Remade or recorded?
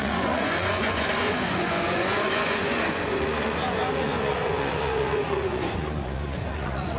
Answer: remade